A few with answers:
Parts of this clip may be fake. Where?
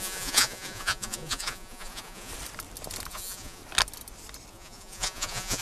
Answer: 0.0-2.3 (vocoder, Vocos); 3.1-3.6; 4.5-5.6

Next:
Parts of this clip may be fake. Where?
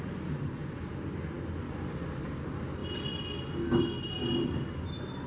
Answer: none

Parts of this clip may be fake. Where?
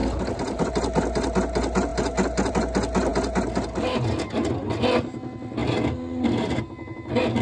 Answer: none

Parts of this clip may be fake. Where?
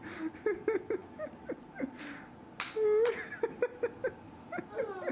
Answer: none